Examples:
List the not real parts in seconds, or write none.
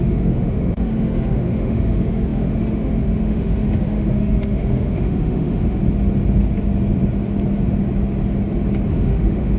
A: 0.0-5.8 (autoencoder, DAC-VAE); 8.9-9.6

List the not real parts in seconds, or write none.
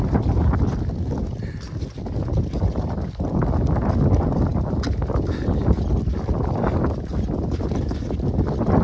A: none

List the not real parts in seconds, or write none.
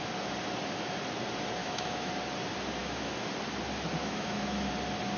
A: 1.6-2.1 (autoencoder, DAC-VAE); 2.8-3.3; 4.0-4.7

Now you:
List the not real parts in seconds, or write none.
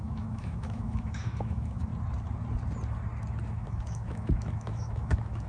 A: 0.0-1.9 (autoencoder, DAC-VAE); 3.5-5.5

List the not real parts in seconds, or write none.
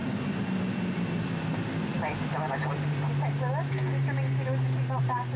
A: none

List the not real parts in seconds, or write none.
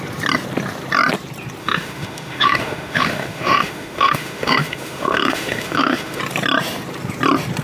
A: 1.6-6.2 (autoencoder, DAC-VAE)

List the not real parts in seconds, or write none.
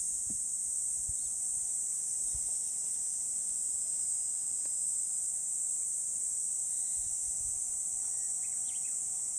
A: none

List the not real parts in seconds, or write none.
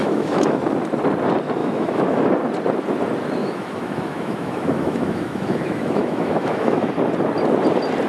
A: 0.0-0.6 (autoencoder, DAC-VAE); 1.6-2.3; 3.4-6.9